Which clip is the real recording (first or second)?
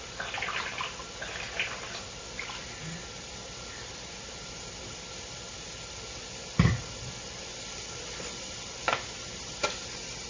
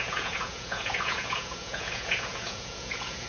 first